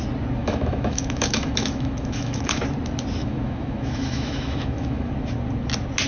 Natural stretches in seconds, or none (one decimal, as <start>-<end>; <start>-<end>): 0.0-0.4; 2.6-3.2; 5.1-6.1